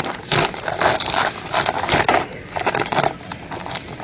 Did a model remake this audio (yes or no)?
no